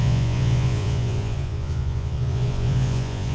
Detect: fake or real fake